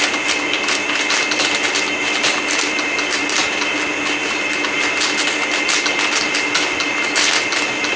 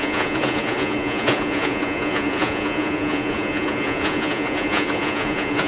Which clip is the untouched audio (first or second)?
first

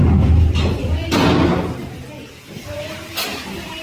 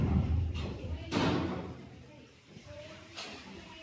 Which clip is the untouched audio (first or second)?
first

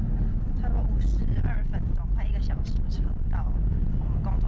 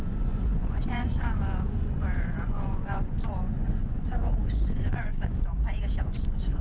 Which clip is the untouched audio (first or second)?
first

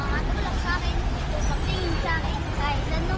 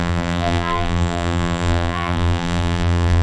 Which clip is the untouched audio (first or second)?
first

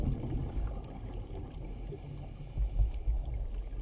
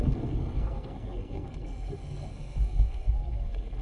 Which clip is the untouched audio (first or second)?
first